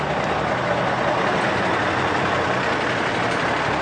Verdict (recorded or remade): recorded